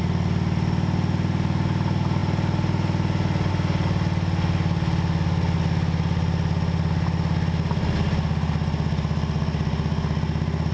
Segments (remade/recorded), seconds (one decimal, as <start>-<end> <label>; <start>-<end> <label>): 0.0-10.7 recorded